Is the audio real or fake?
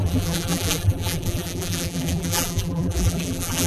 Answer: fake